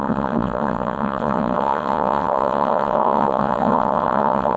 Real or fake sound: fake